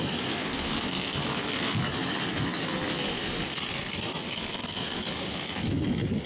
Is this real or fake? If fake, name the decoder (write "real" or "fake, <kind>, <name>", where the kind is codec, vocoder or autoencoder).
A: real